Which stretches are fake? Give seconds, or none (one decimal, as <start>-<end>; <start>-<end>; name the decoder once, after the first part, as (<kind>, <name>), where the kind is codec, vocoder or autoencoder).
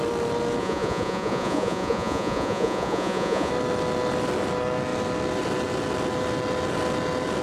0.6-3.5 (vocoder, Vocos)